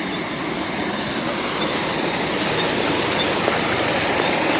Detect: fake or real real